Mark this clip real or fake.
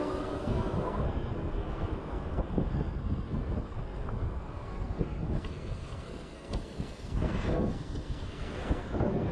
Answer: fake